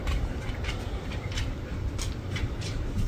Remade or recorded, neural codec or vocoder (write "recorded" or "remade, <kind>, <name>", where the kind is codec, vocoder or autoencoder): remade, vocoder, BigVGAN v2